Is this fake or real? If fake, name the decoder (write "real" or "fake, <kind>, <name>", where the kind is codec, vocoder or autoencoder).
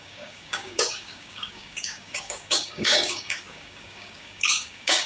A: fake, codec, DAC